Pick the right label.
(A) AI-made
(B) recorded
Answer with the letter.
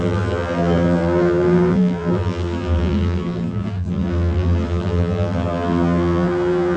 A